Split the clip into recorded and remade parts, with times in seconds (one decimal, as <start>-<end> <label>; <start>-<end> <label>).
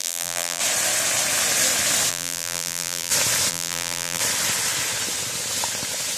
0.0-0.6 remade; 0.6-2.1 recorded; 2.1-3.1 remade; 3.1-3.5 recorded; 3.5-4.2 remade; 4.2-6.2 recorded